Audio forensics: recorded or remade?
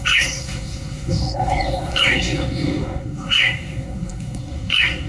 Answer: remade